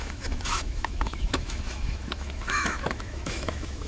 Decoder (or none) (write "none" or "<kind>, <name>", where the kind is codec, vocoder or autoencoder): autoencoder, DAC-VAE